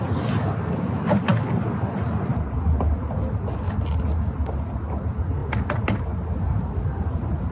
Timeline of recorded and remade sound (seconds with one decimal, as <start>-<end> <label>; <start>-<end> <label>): 0.0-7.5 recorded